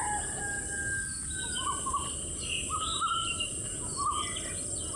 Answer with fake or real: real